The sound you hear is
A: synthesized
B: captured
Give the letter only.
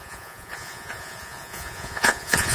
A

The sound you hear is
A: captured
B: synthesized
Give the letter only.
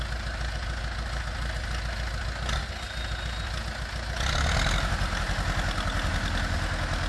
A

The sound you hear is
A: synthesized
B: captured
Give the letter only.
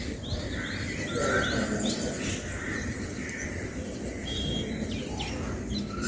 B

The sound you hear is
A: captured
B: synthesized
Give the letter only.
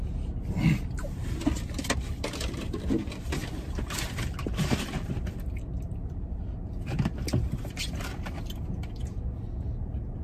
B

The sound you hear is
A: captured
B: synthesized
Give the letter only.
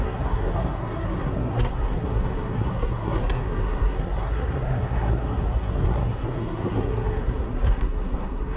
B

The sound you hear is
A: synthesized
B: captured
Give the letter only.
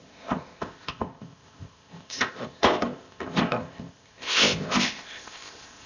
A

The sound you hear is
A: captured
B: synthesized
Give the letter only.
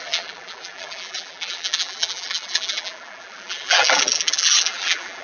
B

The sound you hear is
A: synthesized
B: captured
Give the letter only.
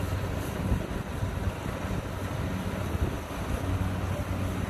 B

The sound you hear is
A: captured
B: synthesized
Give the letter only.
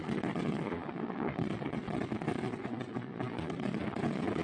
B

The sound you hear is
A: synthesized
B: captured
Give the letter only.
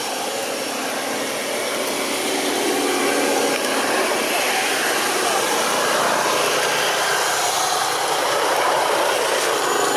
B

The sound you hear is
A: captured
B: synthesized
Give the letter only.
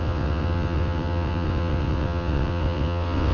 B